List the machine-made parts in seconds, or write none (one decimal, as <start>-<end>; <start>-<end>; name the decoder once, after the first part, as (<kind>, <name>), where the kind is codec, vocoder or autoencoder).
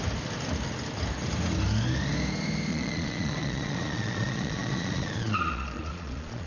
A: 2.7-6.5 (vocoder, Vocos)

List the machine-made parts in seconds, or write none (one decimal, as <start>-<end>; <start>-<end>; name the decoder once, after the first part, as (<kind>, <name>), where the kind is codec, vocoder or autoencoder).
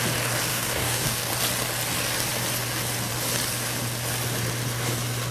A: 0.5-1.3 (codec, DAC)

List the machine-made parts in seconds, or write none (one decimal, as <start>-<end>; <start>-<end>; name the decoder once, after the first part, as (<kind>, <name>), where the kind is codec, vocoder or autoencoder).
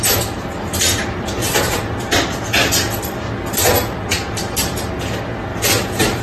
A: 0.7-2.4 (vocoder, BigVGAN v2); 4.1-5.1; 5.5-6.2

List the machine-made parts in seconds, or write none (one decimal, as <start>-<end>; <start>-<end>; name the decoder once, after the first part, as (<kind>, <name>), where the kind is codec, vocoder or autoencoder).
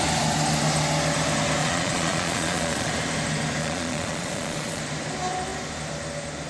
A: 1.6-2.9 (vocoder, Vocos); 3.6-4.8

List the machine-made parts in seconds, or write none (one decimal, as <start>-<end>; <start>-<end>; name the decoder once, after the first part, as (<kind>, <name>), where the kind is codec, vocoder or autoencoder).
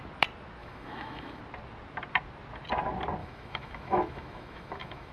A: 0.6-1.4 (autoencoder, DAC-VAE); 3.2-5.1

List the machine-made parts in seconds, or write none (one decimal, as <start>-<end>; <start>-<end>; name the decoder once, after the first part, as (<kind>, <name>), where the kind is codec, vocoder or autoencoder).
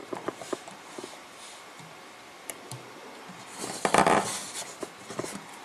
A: 0.0-0.9 (vocoder, BigVGAN v2)